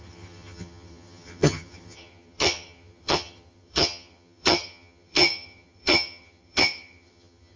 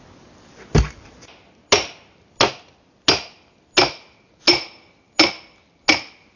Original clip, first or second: second